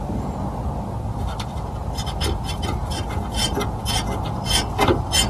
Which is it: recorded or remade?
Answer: recorded